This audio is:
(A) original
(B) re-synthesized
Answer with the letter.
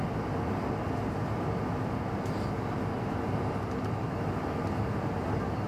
A